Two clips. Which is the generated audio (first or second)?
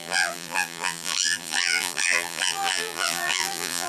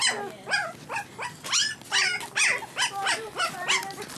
first